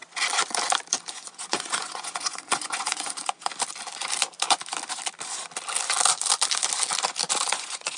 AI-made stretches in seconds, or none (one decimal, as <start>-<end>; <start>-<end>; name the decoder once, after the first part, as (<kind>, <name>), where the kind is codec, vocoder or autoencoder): 1.1-3.5 (vocoder, Vocos); 7.5-8.0